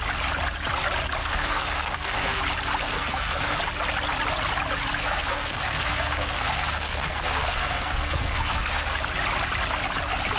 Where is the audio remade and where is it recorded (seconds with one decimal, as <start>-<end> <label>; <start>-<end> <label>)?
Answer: 0.0-1.2 recorded; 1.2-2.4 remade; 2.4-2.8 recorded; 2.8-3.6 remade; 3.6-5.0 recorded; 5.0-9.0 remade; 9.0-10.4 recorded

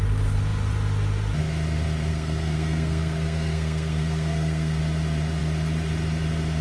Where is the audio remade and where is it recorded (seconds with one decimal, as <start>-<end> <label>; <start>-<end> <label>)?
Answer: 0.0-2.1 recorded; 2.1-4.8 remade; 4.8-6.6 recorded

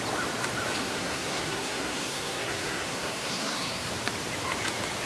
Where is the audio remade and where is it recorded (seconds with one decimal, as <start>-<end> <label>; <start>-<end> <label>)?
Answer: 0.0-0.8 recorded; 0.8-3.9 remade; 3.9-5.1 recorded

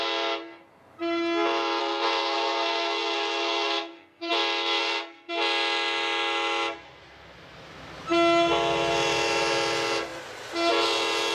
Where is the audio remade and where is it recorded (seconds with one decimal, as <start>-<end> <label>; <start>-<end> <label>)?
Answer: 0.0-1.8 recorded; 1.8-4.3 remade; 4.3-4.8 recorded; 4.8-5.3 remade; 5.3-11.3 recorded

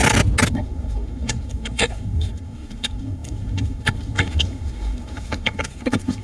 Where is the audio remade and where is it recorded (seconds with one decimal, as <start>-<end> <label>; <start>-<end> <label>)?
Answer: 0.0-0.5 recorded; 0.5-6.2 remade

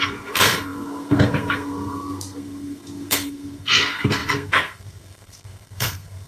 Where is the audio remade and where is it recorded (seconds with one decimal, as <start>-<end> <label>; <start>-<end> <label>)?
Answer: 0.0-6.3 remade

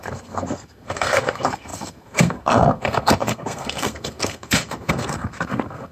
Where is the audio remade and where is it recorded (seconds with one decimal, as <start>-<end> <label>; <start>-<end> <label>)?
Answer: 0.0-5.9 remade